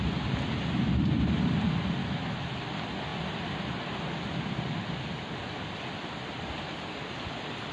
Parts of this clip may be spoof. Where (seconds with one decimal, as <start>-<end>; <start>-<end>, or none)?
2.0-2.5